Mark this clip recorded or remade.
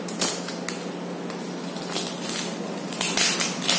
recorded